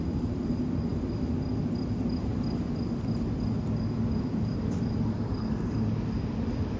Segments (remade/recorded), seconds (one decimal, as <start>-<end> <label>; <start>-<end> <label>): 0.0-6.8 recorded

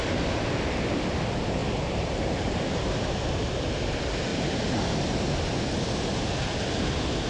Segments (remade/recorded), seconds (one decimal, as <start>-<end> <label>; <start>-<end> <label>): 0.0-1.6 recorded; 1.6-3.3 remade; 3.3-7.3 recorded